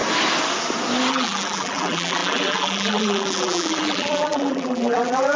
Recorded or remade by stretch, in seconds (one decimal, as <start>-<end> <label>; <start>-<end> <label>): 0.0-1.1 recorded; 1.1-5.4 remade